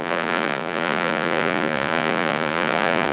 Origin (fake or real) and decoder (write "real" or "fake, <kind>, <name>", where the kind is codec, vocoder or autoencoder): fake, vocoder, Vocos